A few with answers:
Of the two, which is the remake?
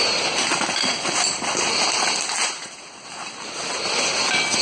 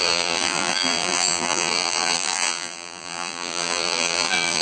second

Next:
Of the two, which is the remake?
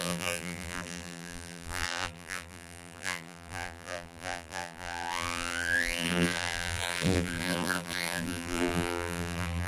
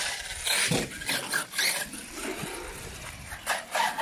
first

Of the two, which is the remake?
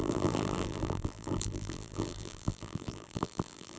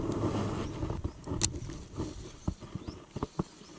first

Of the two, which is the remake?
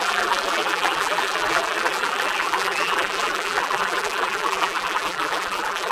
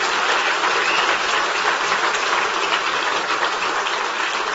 first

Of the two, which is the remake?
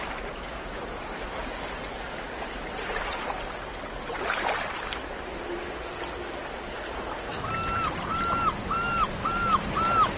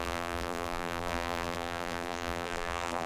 second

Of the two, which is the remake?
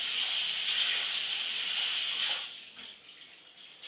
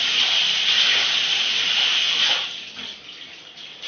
second